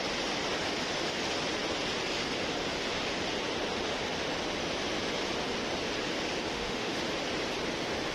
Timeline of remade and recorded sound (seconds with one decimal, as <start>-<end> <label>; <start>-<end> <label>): 0.0-6.5 recorded; 6.5-7.0 remade; 7.0-8.1 recorded